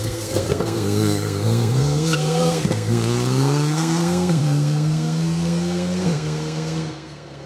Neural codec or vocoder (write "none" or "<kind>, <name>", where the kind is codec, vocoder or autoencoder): codec, SNAC